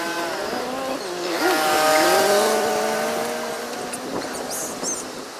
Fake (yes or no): no